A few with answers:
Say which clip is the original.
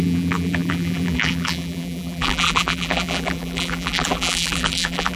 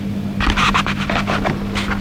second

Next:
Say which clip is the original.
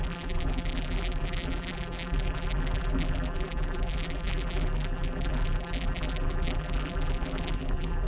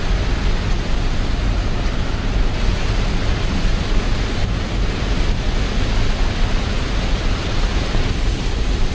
second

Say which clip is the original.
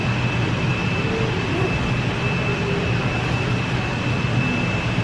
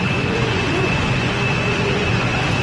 first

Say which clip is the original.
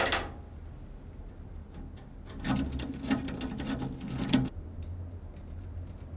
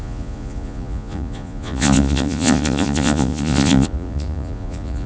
first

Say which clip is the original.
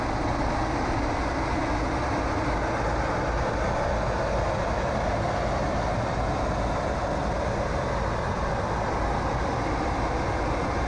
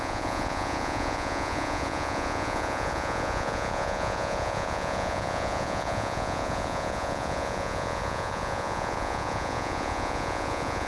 first